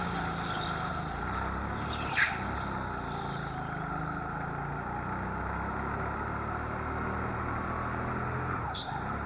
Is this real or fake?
real